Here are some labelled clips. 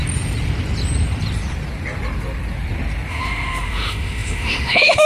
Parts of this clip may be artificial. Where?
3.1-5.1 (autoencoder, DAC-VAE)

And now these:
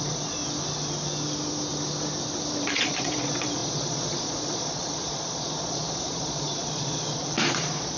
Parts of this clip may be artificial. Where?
0.0-0.4 (vocoder, Vocos); 2.6-8.0

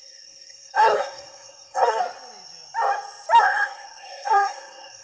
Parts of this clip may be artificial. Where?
0.0-2.0 (codec, SNAC); 3.4-5.0

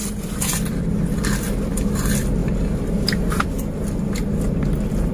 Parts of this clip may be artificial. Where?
0.0-0.7 (vocoder, BigVGAN v2)

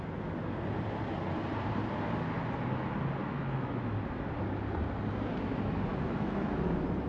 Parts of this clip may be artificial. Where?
3.2-3.8 (autoencoder, DAC-VAE); 5.9-6.5

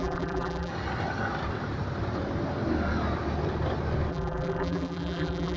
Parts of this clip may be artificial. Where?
0.0-0.7 (vocoder, BigVGAN v2); 4.1-5.6

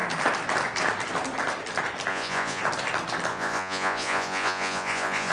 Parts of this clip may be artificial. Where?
2.1-2.6 (vocoder, Vocos); 3.3-5.3

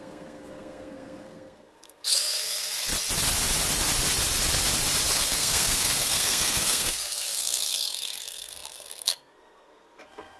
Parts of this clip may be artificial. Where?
0.0-2.9 (codec, SNAC); 5.1-10.4